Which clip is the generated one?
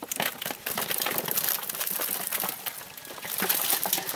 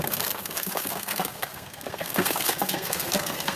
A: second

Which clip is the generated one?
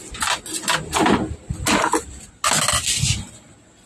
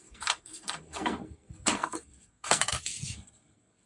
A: second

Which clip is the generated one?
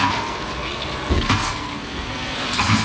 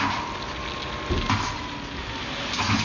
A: first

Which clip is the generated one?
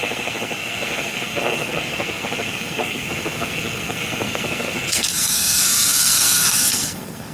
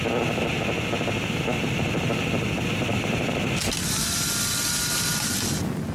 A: first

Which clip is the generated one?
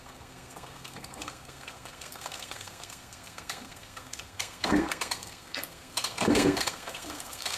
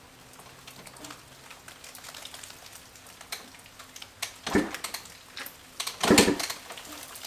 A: first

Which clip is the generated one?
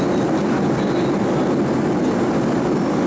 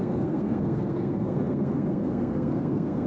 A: second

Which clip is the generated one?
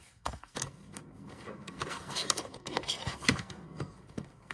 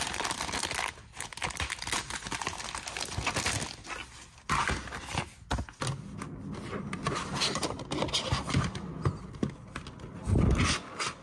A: first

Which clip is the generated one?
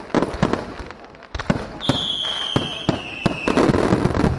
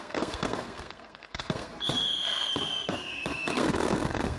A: second